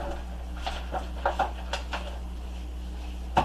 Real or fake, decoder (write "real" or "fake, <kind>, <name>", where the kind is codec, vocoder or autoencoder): real